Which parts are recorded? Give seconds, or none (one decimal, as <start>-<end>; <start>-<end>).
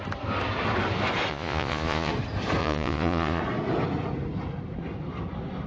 0.0-1.3; 2.1-2.6; 3.4-5.7